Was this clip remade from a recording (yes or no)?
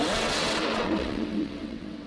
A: yes